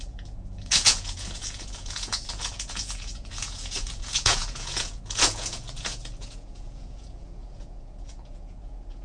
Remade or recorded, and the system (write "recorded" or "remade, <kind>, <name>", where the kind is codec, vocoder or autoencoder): remade, vocoder, Vocos